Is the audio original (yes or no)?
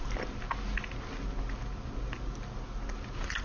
yes